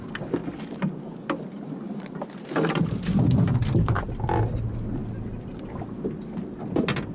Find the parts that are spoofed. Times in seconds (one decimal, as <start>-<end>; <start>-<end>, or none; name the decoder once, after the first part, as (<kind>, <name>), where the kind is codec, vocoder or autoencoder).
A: none